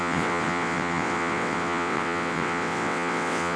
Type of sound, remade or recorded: remade